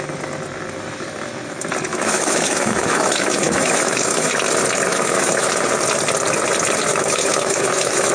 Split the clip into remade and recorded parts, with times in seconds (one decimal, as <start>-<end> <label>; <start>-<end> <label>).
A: 0.0-1.9 recorded; 1.9-4.3 remade; 4.3-4.9 recorded; 4.9-5.5 remade; 5.5-6.9 recorded; 6.9-8.1 remade